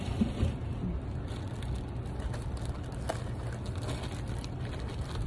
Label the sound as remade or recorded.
recorded